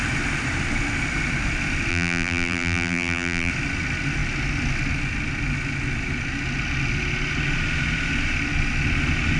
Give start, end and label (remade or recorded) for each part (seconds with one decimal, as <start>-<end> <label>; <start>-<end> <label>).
0.0-1.9 recorded; 1.9-3.5 remade; 3.5-9.4 recorded